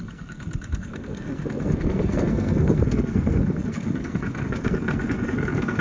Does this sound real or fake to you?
fake